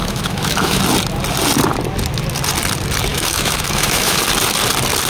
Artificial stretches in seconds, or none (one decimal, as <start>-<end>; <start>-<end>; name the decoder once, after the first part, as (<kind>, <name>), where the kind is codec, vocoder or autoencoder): 0.0-0.8 (autoencoder, DAC-VAE); 3.1-4.2